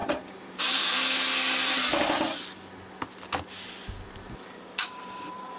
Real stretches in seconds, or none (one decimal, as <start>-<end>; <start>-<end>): 0.8-4.8